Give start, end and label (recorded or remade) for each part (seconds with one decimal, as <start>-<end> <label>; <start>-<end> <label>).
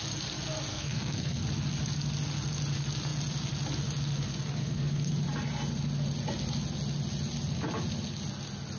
0.0-0.7 recorded; 0.7-1.4 remade; 1.4-4.6 recorded; 4.6-5.1 remade; 5.1-8.8 recorded